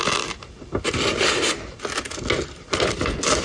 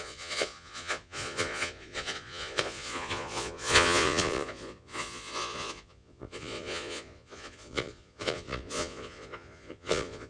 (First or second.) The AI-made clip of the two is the second